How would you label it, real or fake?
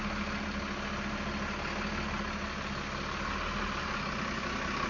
real